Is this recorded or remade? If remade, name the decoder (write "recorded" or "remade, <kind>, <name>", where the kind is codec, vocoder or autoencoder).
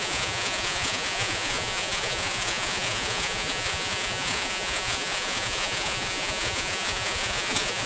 remade, vocoder, Vocos